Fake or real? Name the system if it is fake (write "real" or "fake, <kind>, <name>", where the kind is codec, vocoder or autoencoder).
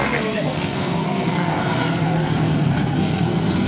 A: fake, codec, SNAC